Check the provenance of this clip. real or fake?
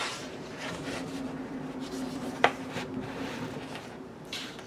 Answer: fake